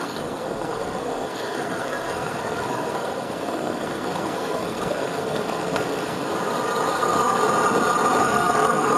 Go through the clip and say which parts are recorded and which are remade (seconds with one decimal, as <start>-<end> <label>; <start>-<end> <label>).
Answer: 0.0-6.3 remade; 6.3-6.9 recorded; 6.9-7.4 remade; 7.4-8.2 recorded; 8.2-9.0 remade